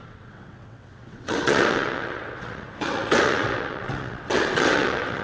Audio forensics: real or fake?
fake